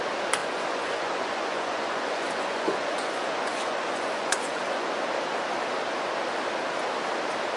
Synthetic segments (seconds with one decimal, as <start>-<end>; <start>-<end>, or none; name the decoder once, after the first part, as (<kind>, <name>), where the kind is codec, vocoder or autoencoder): 0.4-5.0 (vocoder, Vocos)

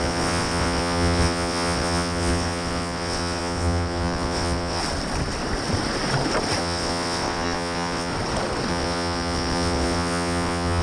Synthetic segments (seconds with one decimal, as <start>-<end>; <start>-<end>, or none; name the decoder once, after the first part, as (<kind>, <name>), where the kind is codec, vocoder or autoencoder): 0.0-4.8 (vocoder, WaveNeXt); 6.6-8.1; 8.7-10.8

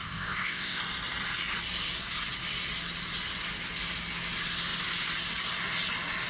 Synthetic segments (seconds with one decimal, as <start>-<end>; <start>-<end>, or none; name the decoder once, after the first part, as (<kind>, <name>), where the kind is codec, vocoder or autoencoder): 0.0-0.8 (codec, ZipCodec)